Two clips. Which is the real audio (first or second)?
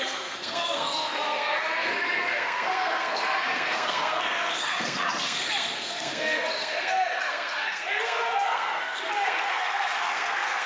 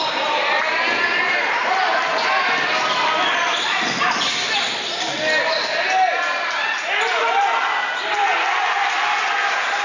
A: second